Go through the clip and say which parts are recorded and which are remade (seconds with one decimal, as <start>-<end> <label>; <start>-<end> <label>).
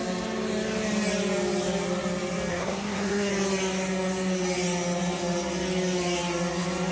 0.0-2.5 recorded; 2.5-3.3 remade; 3.3-6.9 recorded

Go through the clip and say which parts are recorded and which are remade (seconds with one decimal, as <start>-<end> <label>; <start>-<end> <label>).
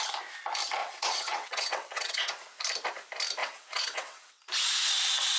0.0-0.8 recorded; 0.8-2.3 remade; 2.3-3.4 recorded; 3.4-4.4 remade; 4.4-5.4 recorded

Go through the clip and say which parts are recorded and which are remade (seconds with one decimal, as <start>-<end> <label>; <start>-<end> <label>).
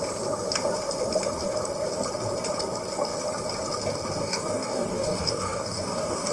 0.0-4.2 recorded; 4.2-6.3 remade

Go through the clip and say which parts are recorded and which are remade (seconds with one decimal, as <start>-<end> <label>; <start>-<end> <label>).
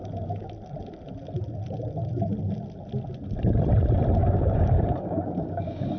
0.0-4.2 recorded; 4.2-6.0 remade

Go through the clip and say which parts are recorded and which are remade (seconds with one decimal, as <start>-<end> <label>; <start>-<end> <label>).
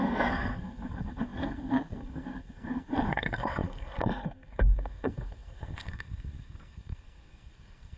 0.0-8.0 remade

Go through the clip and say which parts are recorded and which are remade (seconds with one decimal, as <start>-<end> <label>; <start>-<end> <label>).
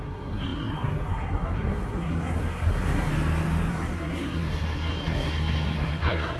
0.0-3.1 remade; 3.1-3.7 recorded; 3.7-6.4 remade